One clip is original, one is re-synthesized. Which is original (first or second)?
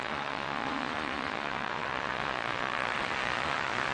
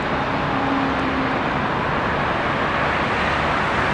second